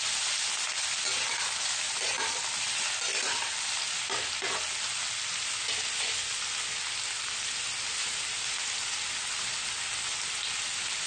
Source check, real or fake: real